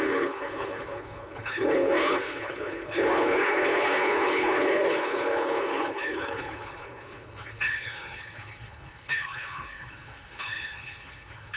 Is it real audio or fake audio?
fake